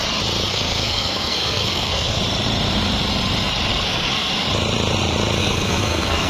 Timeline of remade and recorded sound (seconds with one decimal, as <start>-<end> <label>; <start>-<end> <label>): 0.0-0.5 recorded; 0.5-2.2 remade; 2.2-3.7 recorded; 3.7-4.3 remade; 4.3-5.4 recorded; 5.4-6.3 remade